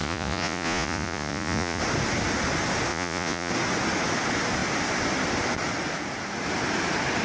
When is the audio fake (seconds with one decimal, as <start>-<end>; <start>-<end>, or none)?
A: 0.0-1.8; 2.9-3.5